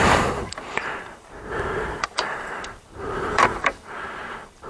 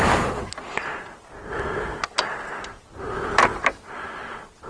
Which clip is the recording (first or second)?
second